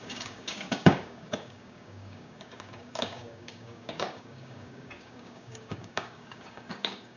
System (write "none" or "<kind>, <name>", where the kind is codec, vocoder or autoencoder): codec, DAC